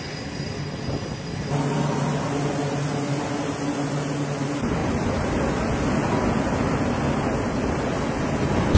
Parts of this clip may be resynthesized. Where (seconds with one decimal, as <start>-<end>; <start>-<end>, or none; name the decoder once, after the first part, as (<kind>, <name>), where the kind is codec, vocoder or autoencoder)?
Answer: none